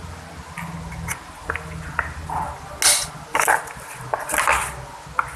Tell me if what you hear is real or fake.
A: real